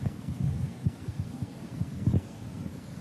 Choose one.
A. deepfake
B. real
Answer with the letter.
A